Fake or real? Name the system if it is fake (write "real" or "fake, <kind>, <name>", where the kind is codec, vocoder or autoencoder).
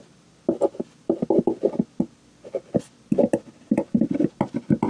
real